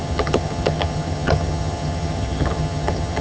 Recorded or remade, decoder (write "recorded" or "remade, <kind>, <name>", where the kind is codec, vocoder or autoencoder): remade, vocoder, HiFi-GAN